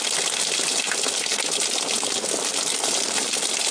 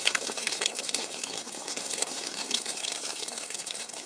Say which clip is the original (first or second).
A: first